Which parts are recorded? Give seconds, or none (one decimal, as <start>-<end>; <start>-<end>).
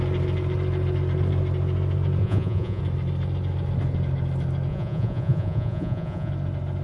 0.0-2.2; 2.8-4.7; 6.3-6.8